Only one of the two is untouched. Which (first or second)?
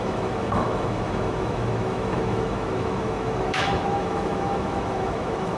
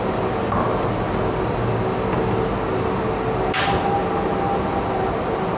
second